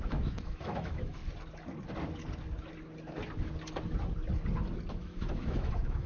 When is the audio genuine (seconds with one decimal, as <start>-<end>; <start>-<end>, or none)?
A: 1.2-4.9